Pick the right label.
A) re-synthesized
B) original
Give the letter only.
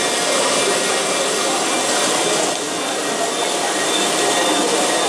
B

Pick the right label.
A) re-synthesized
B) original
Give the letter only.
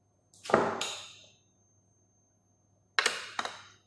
B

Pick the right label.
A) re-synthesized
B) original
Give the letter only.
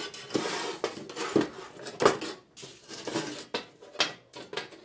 B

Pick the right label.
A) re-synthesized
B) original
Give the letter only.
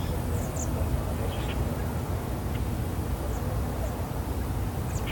B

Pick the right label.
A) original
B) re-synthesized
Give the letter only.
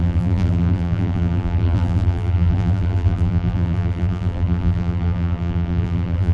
B